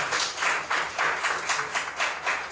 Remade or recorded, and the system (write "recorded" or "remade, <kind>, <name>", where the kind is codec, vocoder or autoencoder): recorded